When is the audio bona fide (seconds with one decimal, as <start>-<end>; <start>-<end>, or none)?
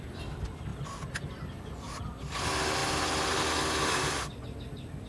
0.0-5.1